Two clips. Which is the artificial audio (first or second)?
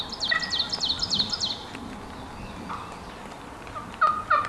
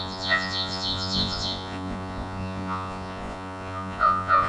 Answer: second